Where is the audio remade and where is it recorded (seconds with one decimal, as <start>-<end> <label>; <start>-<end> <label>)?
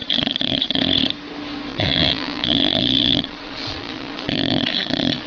0.0-0.8 remade; 0.8-1.7 recorded; 1.7-5.3 remade